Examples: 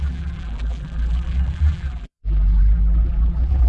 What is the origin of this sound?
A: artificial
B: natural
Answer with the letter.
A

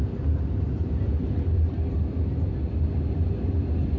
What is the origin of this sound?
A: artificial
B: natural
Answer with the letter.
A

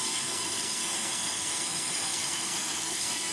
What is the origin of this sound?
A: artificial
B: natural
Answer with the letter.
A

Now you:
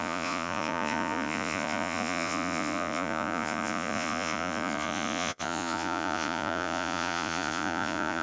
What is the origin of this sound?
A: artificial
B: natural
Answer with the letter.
A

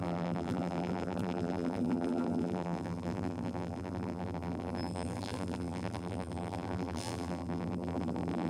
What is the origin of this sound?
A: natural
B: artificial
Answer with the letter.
B